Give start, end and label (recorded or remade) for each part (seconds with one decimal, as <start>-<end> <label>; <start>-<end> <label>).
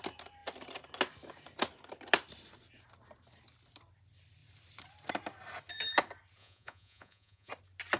0.0-6.4 recorded; 6.4-7.5 remade; 7.5-8.0 recorded